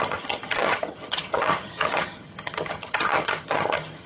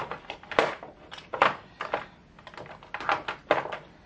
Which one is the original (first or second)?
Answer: second